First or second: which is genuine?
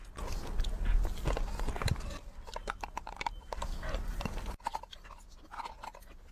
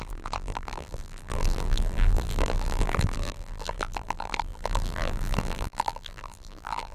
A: first